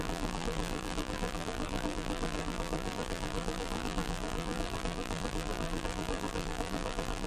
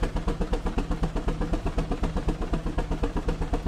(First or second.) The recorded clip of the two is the second